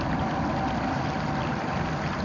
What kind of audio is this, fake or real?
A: real